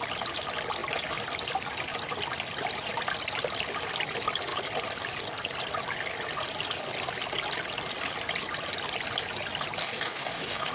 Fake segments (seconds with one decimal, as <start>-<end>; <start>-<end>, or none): 9.8-10.7